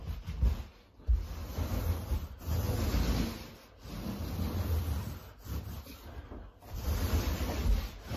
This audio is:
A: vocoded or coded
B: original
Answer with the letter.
B